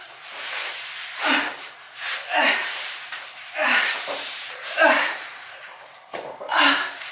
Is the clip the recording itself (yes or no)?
no